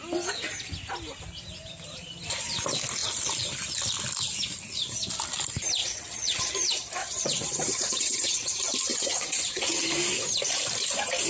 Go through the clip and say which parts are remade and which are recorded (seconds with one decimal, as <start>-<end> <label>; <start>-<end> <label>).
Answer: 0.0-5.8 recorded; 5.8-6.5 remade; 6.5-7.0 recorded; 7.0-8.5 remade; 8.5-8.9 recorded; 8.9-9.8 remade; 9.8-11.3 recorded